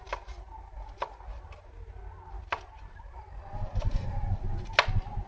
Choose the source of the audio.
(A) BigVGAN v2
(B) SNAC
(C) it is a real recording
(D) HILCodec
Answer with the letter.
C